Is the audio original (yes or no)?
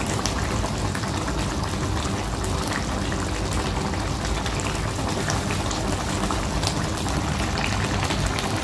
yes